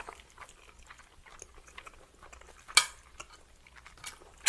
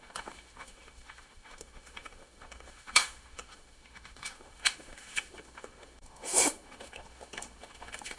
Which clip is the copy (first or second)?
second